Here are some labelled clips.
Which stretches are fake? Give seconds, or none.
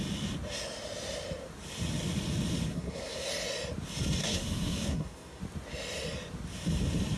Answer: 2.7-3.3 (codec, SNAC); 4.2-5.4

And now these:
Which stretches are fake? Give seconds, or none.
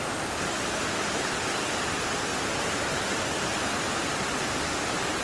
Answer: none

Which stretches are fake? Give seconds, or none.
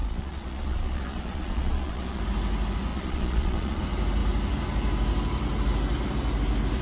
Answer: 0.0-2.2 (vocoder, Vocos); 2.9-3.8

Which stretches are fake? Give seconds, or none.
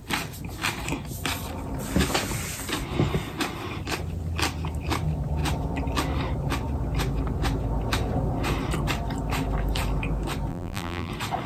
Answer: 10.5-11.1 (vocoder, BigVGAN v2)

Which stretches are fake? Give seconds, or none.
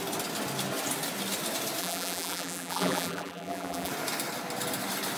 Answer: 1.8-3.9 (vocoder, BigVGAN v2)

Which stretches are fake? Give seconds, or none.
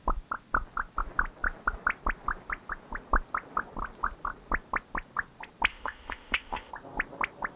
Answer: 5.7-6.7 (codec, ZipCodec)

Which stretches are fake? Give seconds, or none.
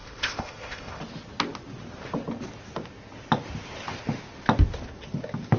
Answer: 0.0-1.0 (codec, ZipCodec)